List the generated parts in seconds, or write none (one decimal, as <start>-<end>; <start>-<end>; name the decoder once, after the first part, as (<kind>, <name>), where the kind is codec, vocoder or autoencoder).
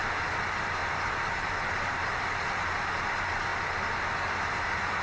0.8-2.1 (vocoder, BigVGAN v2)